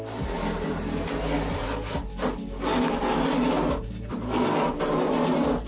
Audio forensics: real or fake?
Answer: real